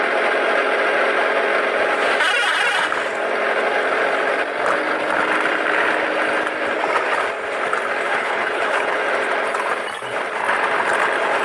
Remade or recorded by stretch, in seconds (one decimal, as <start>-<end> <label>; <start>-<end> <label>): 0.0-8.1 recorded; 8.1-9.0 remade; 9.0-11.4 recorded